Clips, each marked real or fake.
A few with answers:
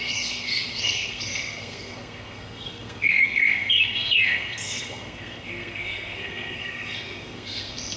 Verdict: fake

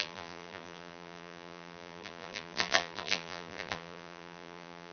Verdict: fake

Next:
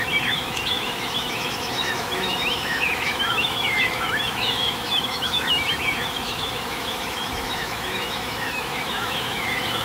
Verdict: fake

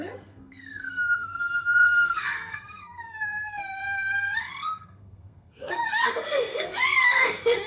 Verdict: fake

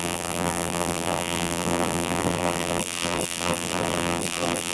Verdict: fake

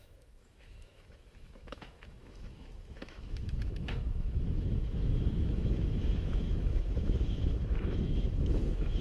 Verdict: fake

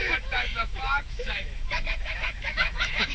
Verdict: fake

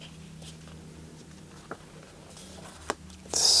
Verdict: real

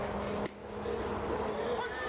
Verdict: real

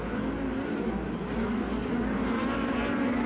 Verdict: real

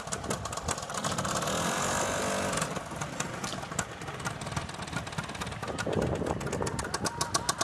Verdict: real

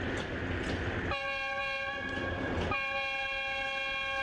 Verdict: real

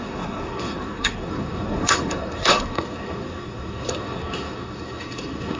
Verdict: fake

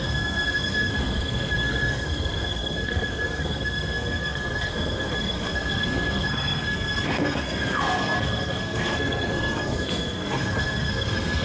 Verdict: fake